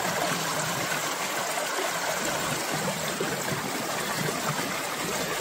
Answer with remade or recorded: recorded